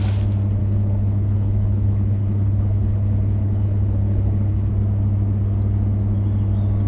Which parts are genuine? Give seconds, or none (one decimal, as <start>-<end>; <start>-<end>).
0.0-0.6; 4.7-6.9